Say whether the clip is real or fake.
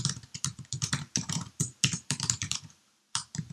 fake